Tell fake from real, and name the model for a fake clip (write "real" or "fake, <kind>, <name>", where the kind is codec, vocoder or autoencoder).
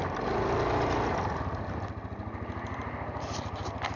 real